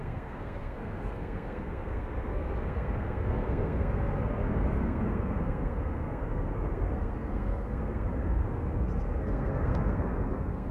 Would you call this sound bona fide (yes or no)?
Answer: no